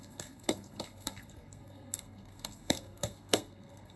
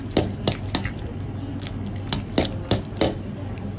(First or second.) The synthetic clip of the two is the first